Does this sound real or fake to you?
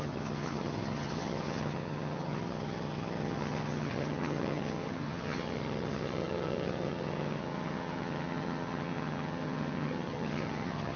fake